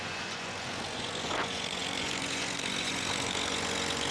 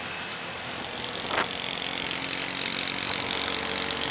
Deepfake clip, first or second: first